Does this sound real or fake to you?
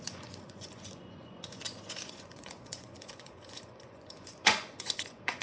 fake